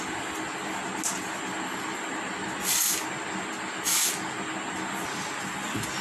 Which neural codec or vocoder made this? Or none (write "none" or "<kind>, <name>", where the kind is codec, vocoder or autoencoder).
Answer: none